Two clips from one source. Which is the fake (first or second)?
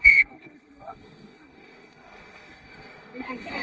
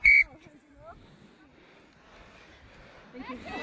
first